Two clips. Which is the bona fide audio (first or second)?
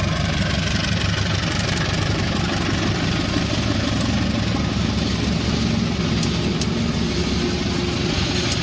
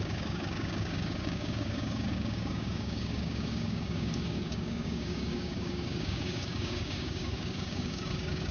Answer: first